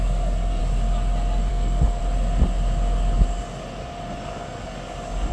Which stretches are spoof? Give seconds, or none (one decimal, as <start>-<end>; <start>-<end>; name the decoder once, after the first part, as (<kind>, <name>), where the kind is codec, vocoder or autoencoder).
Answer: 0.0-0.6 (codec, SNAC); 1.5-2.0